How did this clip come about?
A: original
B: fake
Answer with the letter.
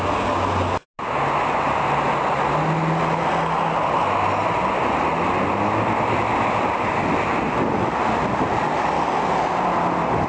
A